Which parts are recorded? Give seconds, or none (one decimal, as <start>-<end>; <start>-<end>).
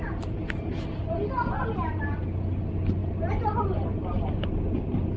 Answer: 0.0-5.2